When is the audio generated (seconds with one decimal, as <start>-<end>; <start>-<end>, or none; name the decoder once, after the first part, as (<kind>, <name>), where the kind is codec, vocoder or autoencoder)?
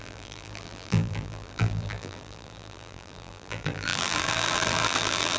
0.0-5.4 (vocoder, BigVGAN v2)